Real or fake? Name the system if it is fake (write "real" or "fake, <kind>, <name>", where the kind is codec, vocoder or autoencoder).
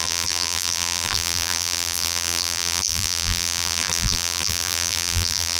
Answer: fake, vocoder, BigVGAN v2